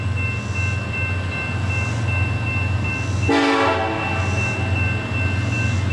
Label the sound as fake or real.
real